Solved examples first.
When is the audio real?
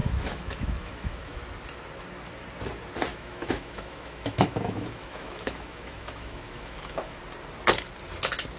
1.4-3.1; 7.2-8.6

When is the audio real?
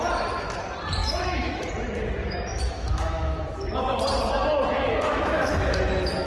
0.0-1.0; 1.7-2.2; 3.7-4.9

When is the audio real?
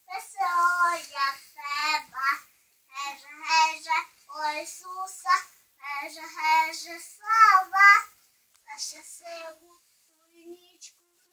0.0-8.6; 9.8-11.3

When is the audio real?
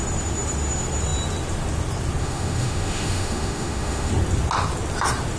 0.0-2.2; 4.1-5.4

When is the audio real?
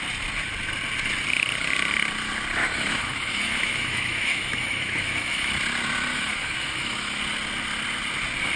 0.0-2.6; 5.5-6.1; 7.2-8.6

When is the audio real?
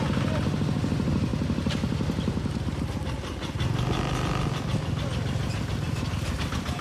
0.0-6.8